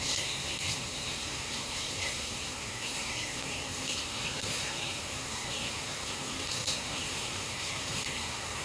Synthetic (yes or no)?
yes